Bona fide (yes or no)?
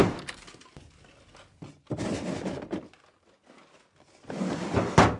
yes